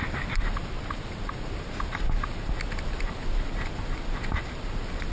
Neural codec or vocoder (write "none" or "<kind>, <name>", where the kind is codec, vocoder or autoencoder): none